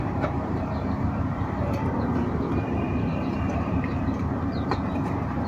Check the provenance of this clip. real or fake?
fake